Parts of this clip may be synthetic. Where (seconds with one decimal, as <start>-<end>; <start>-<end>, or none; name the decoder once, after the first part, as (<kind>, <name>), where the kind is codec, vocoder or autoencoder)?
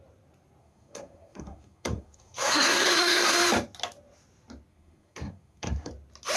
0.6-3.4 (codec, SNAC); 4.7-5.9